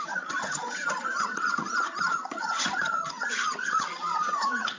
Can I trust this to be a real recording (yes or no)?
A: no